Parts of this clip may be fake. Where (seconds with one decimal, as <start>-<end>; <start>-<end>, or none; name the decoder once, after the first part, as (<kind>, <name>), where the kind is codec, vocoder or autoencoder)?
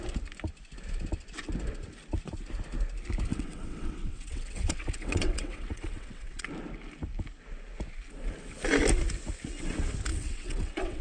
3.3-6.5 (vocoder, WaveNeXt); 10.1-11.0